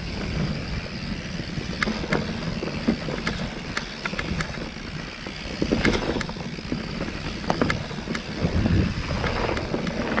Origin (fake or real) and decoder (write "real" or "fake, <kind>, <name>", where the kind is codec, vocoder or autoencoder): real